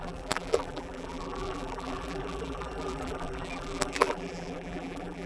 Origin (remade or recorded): remade